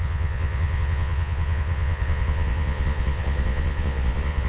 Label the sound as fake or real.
fake